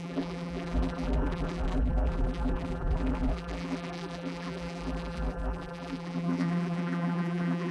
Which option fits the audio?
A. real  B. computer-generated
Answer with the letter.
B